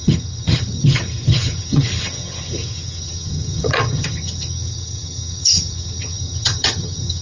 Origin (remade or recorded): remade